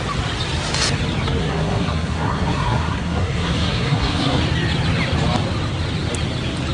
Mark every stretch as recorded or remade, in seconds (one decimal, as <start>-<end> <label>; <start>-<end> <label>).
0.0-1.4 recorded; 1.4-4.4 remade; 4.4-6.7 recorded